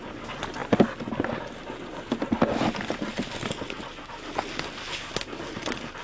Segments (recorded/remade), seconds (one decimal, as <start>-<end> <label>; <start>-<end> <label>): 0.0-6.0 recorded